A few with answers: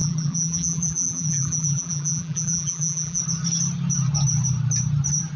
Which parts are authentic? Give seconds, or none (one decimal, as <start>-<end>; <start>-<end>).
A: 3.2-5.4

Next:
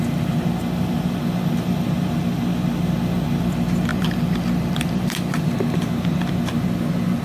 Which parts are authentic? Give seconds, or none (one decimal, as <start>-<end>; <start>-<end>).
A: 0.0-3.9; 5.4-7.2

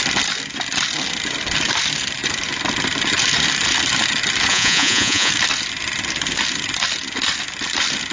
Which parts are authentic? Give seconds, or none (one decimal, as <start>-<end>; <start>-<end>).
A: 0.0-4.5; 5.3-8.1

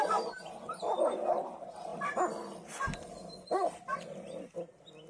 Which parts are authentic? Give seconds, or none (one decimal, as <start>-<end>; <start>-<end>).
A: 0.0-5.1

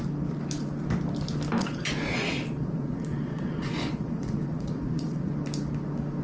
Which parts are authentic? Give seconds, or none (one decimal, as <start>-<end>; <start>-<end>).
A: 0.0-1.6; 5.3-6.2